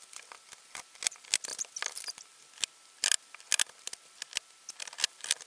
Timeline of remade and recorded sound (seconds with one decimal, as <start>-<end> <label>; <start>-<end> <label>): 0.0-5.5 recorded